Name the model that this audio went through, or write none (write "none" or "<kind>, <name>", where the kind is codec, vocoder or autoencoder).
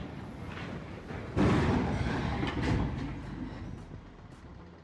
none